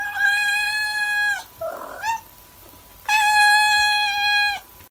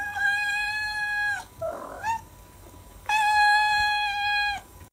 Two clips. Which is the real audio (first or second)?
first